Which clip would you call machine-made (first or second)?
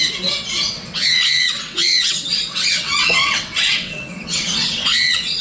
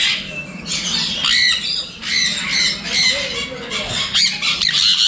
first